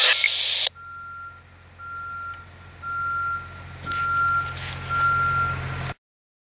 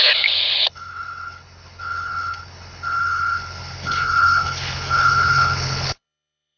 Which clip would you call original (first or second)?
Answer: first